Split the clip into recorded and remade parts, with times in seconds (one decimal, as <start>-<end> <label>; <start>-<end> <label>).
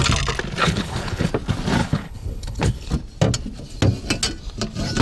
0.0-0.6 recorded; 0.6-1.3 remade; 1.3-1.8 recorded; 1.8-2.9 remade; 2.9-5.0 recorded